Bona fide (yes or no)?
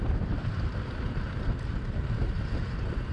yes